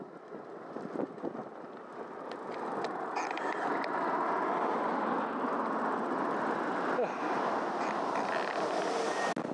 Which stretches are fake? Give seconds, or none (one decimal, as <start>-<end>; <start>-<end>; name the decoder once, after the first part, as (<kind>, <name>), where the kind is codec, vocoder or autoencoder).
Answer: none